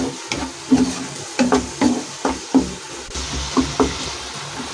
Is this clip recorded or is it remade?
recorded